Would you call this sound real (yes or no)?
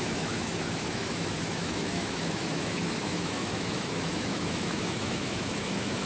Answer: no